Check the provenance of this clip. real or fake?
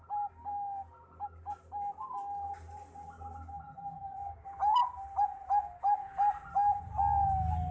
real